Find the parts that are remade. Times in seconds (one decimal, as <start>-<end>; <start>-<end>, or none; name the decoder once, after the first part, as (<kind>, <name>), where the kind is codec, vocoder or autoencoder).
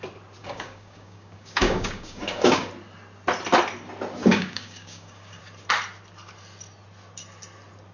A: 0.4-2.7 (codec, DAC); 4.2-5.4